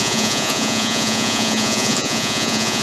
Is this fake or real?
fake